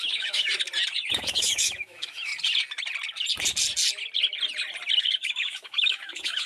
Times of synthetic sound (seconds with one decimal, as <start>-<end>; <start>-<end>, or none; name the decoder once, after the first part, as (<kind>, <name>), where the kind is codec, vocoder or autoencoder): 0.0-0.5 (autoencoder, DAC-VAE); 1.1-2.3; 5.0-6.5